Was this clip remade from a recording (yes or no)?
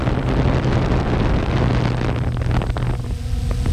no